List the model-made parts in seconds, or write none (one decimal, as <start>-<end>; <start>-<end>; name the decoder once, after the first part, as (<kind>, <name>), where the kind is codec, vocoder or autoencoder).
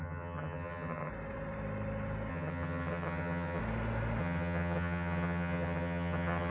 0.0-1.1 (vocoder, HiFi-GAN); 2.3-3.6; 4.2-6.5